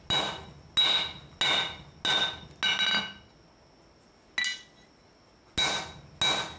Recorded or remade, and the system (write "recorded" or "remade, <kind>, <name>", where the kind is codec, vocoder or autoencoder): recorded